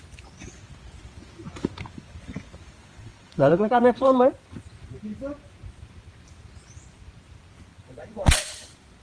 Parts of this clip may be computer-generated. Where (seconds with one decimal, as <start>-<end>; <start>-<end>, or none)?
2.8-4.6; 7.7-8.4